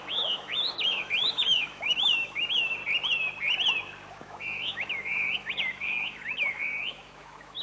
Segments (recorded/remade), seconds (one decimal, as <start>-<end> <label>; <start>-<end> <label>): 0.0-2.8 remade; 2.8-4.1 recorded; 4.1-7.6 remade